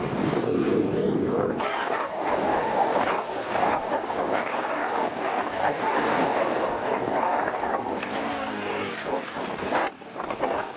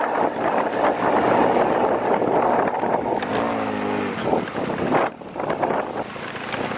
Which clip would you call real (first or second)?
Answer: second